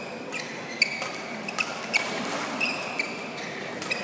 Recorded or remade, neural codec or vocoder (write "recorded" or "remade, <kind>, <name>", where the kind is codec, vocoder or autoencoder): recorded